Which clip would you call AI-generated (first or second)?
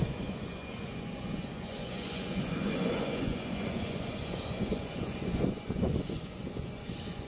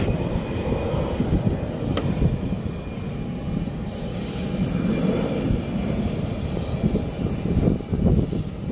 first